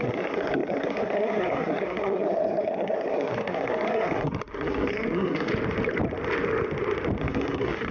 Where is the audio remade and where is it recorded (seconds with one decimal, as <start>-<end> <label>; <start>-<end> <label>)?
0.0-5.5 remade; 5.5-7.2 recorded; 7.2-7.9 remade